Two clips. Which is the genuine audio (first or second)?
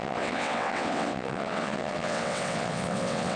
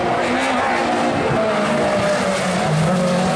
second